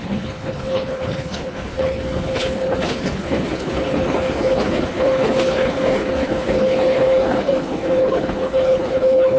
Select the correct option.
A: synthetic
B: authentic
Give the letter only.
A